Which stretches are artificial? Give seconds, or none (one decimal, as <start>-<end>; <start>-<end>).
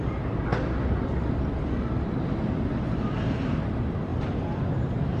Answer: 0.0-0.5; 3.6-4.1; 4.7-5.2